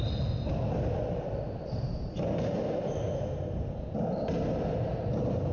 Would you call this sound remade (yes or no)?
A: no